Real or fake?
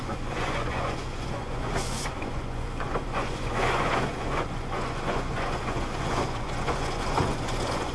fake